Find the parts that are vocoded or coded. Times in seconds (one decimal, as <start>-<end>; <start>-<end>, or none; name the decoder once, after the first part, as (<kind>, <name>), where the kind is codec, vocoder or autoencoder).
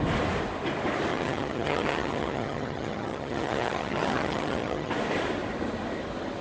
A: 1.1-4.9 (vocoder, HiFi-GAN)